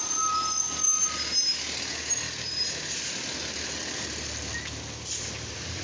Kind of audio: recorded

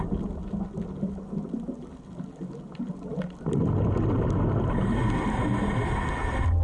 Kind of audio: recorded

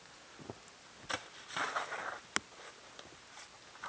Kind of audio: recorded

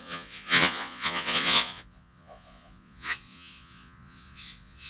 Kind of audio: remade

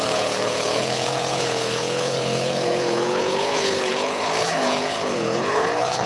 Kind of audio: remade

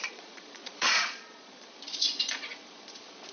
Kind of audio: remade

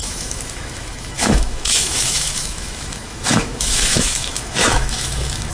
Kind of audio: remade